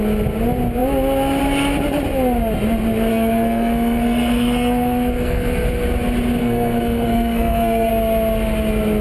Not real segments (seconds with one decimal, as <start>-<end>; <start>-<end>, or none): 3.1-5.7; 6.4-7.9